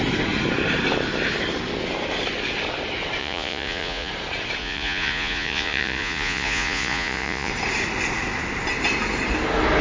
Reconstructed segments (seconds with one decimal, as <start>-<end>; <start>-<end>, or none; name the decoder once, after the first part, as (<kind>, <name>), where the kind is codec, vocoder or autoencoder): 3.2-4.1 (vocoder, Vocos); 4.6-7.5